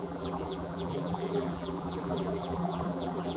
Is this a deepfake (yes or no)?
yes